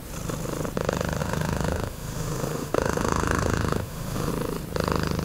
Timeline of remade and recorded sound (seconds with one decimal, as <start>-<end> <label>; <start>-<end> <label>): 0.0-1.2 recorded; 1.2-4.3 remade; 4.3-5.2 recorded